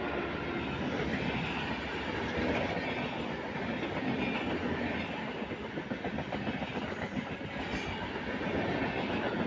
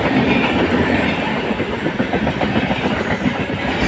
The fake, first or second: second